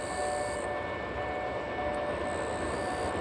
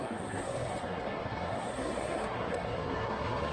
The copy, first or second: second